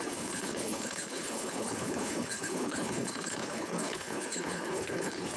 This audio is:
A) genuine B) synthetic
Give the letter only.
B